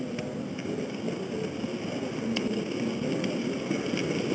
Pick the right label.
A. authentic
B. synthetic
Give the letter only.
A